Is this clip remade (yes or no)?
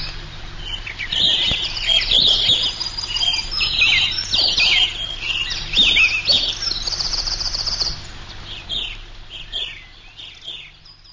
no